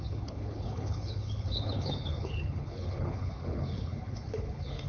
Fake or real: fake